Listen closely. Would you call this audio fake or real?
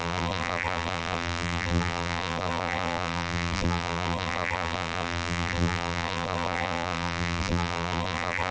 fake